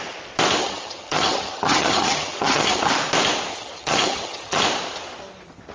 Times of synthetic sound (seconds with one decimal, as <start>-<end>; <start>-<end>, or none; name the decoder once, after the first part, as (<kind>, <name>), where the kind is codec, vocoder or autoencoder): 0.6-2.8 (vocoder, HiFi-GAN); 3.5-4.6

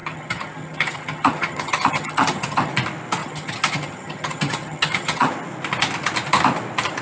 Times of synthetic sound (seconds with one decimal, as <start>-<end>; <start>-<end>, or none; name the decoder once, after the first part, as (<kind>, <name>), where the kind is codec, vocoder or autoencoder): 0.0-2.7 (vocoder, HiFi-GAN); 3.2-5.3

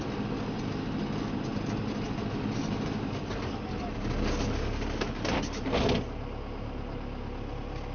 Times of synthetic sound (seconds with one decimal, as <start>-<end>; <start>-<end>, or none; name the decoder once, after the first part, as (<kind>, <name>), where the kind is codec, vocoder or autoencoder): none

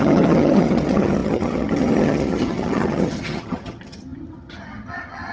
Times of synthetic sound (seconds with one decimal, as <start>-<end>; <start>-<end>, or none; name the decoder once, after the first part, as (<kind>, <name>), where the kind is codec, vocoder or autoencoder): 0.0-5.3 (vocoder, HiFi-GAN)

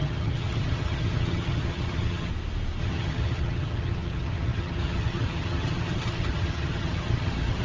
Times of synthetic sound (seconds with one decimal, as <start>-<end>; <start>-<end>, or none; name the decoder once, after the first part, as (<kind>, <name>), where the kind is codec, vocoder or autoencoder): 0.0-2.3 (vocoder, HiFi-GAN); 2.8-7.6

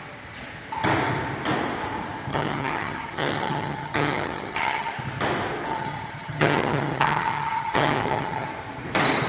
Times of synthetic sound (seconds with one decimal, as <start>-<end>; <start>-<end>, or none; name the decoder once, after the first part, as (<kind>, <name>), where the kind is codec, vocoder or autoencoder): 2.3-4.9 (vocoder, HiFi-GAN); 5.7-8.5